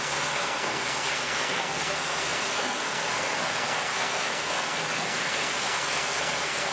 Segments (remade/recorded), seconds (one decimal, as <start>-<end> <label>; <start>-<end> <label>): 0.0-6.7 remade